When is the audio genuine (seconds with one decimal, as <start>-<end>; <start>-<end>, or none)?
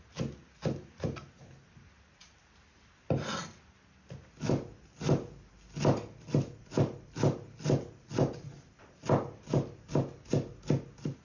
0.0-11.2